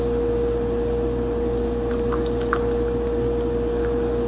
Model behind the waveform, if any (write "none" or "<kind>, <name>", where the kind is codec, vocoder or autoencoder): none